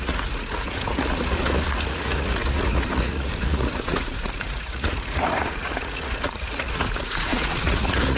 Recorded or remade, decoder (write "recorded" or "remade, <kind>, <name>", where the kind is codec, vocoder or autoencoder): remade, vocoder, Vocos